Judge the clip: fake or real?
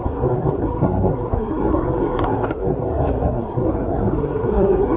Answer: fake